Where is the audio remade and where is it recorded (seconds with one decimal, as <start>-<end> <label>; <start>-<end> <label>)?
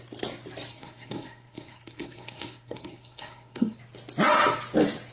0.0-0.7 recorded; 0.7-3.8 remade; 3.8-5.1 recorded